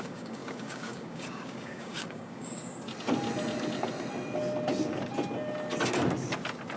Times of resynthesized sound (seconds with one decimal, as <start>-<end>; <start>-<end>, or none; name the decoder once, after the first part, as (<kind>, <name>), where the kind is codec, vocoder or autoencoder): 0.0-2.6 (codec, DAC)